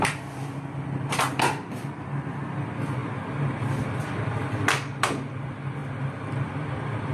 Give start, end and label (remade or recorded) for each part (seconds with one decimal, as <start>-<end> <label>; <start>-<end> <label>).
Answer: 0.0-7.1 remade